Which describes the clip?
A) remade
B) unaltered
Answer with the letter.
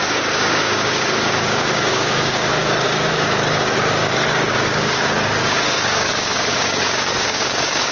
A